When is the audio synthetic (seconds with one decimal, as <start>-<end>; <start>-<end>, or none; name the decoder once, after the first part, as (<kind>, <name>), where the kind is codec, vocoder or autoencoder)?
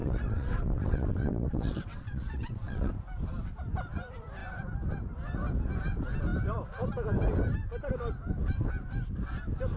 0.0-2.9 (vocoder, WaveNeXt)